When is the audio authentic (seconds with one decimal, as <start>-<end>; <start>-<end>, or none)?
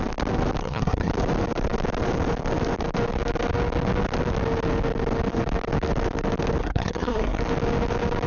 0.0-0.6; 1.1-6.6; 7.4-8.3